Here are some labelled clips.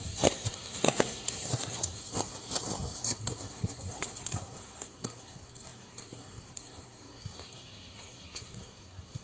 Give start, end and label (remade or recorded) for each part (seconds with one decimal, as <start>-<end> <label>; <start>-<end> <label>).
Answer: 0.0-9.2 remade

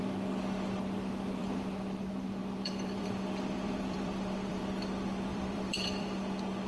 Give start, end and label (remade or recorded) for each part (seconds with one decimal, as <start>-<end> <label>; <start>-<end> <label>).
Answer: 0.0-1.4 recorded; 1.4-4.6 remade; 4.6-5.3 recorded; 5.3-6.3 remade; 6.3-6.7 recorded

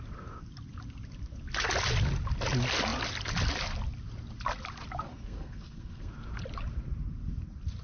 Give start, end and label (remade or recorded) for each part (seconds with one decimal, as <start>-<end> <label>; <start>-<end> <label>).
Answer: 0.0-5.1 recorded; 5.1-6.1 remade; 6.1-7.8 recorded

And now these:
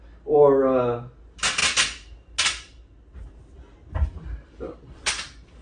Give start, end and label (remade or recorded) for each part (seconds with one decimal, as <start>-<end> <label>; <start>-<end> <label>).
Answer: 0.0-5.6 recorded

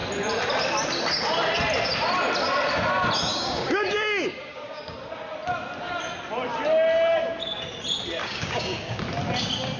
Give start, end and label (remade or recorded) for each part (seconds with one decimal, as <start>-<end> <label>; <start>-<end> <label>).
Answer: 0.0-3.3 recorded; 3.3-4.8 remade; 4.8-8.2 recorded; 8.2-9.0 remade; 9.0-9.8 recorded

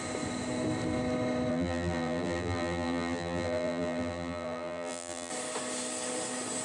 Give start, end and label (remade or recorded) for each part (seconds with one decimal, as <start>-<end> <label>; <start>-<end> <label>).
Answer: 0.0-1.5 recorded; 1.5-5.3 remade; 5.3-6.6 recorded

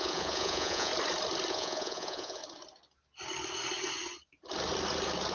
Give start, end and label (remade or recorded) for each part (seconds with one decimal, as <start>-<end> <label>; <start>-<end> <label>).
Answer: 0.0-0.9 remade; 0.9-1.5 recorded; 1.5-2.4 remade; 2.4-5.3 recorded